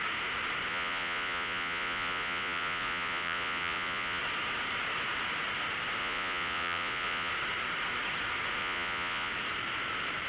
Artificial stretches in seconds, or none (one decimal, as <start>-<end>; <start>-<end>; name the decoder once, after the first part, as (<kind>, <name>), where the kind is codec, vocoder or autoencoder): 0.7-4.2 (vocoder, Vocos); 6.0-7.3; 8.6-9.3